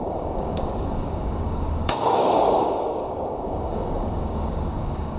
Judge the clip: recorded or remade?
remade